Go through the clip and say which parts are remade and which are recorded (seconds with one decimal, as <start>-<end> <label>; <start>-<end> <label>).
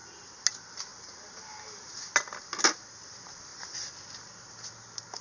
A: 0.0-5.2 recorded